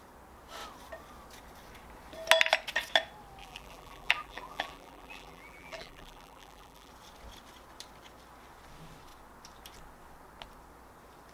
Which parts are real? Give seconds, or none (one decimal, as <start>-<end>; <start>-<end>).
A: 0.0-3.4; 6.9-11.3